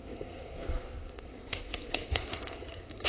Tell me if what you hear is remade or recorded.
remade